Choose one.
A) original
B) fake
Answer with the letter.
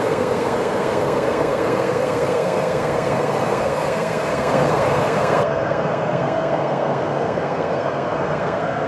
B